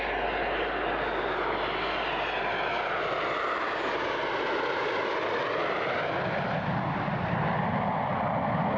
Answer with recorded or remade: recorded